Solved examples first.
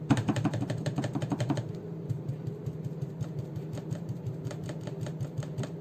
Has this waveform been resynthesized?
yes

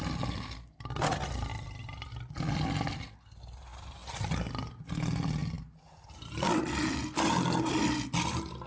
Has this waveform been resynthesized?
no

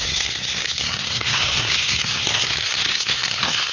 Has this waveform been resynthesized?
yes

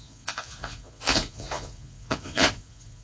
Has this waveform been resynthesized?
yes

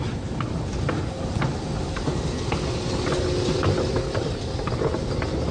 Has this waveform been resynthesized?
no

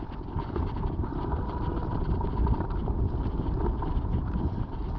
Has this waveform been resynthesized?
no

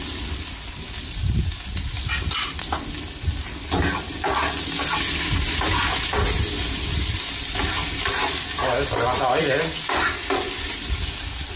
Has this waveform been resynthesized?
no